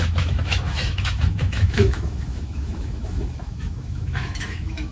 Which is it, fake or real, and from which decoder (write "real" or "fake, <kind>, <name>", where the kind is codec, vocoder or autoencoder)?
fake, autoencoder, DAC-VAE